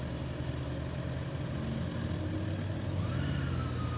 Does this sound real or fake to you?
real